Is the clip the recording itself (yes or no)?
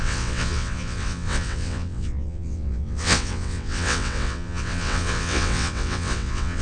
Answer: no